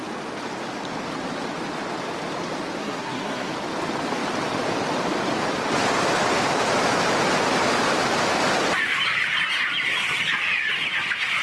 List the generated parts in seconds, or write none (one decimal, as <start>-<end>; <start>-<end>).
2.8-3.5